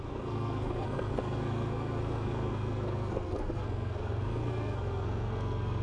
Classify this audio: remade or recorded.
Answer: remade